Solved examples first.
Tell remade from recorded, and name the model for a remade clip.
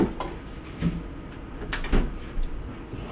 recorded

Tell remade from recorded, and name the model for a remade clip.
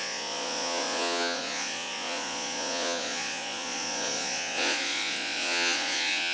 remade, vocoder, Vocos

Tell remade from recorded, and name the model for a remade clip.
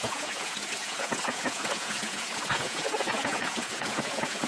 remade, vocoder, Vocos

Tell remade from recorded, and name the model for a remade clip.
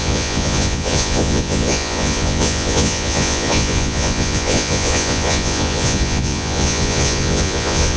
remade, vocoder, Vocos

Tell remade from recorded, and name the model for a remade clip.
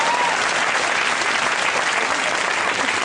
recorded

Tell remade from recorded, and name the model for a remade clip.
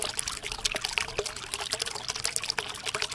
recorded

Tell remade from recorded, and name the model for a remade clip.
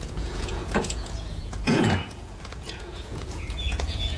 remade, vocoder, Vocos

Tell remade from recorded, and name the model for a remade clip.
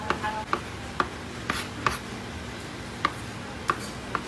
recorded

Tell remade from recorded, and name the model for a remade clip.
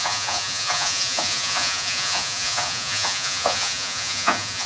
remade, vocoder, Vocos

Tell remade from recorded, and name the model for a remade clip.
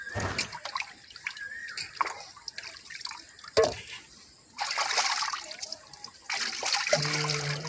recorded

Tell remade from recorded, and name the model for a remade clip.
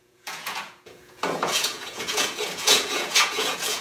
remade, vocoder, Vocos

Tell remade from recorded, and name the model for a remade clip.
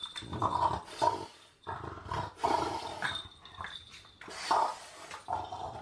recorded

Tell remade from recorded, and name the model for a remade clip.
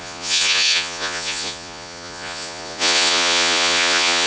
remade, vocoder, Vocos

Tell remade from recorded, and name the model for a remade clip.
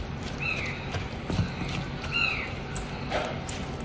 recorded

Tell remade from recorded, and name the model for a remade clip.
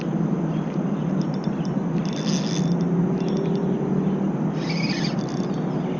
recorded